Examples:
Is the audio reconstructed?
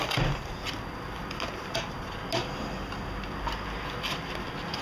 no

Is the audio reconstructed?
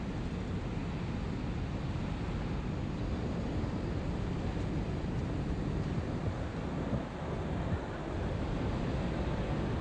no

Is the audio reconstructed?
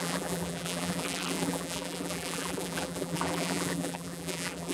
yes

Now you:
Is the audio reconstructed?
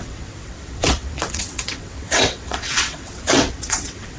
yes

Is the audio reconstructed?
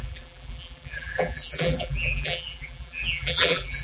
yes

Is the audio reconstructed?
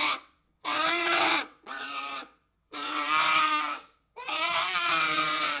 yes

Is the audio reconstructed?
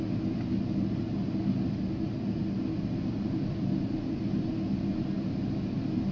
no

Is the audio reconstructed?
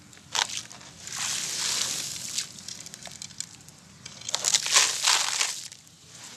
no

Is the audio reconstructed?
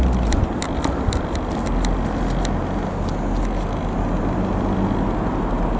no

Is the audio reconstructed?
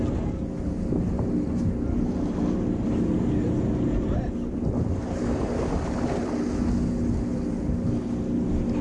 no